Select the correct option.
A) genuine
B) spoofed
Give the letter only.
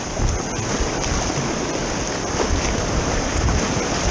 A